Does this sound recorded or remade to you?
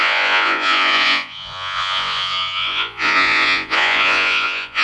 remade